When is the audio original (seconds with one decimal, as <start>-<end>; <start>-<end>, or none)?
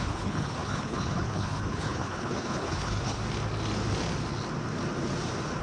3.2-5.6